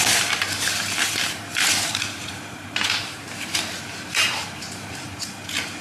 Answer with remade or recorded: remade